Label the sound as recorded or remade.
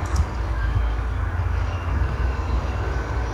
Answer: remade